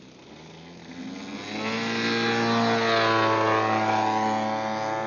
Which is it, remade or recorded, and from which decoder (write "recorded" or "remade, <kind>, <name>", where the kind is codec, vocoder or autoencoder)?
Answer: recorded